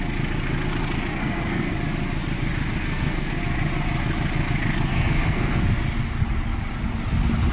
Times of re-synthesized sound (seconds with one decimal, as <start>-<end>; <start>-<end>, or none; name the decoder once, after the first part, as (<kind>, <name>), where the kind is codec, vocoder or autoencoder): 1.1-1.7 (codec, SNAC); 2.8-3.4; 4.9-5.6